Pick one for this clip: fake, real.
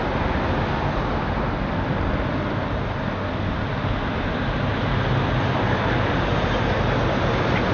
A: real